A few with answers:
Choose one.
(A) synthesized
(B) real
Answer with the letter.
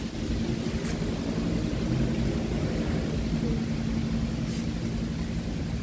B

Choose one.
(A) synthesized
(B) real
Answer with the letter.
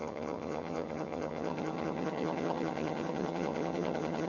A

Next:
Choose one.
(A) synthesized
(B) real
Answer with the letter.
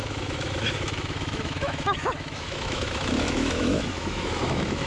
A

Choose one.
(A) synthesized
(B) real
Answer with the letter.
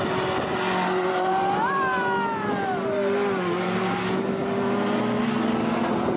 B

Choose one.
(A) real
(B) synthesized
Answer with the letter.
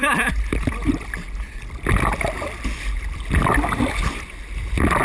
A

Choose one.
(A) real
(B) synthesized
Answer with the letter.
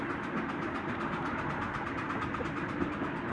A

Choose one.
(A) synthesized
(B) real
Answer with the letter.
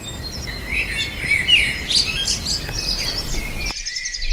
B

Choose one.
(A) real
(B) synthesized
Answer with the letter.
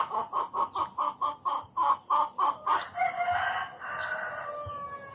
A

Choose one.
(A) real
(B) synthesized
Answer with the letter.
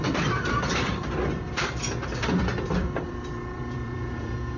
B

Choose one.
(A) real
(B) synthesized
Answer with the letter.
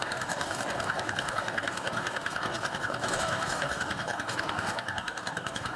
B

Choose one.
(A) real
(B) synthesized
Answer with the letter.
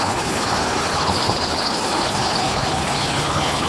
B